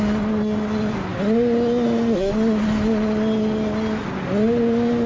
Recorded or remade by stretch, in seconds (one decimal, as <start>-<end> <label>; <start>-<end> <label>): 0.0-5.1 recorded